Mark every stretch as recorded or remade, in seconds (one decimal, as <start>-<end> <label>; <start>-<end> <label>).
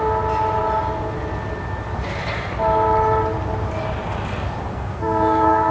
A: 0.0-4.7 recorded; 4.7-5.7 remade